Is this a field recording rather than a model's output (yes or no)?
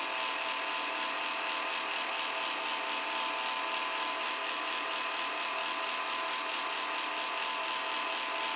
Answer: yes